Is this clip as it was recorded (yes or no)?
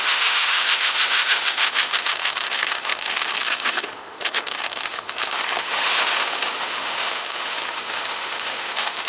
no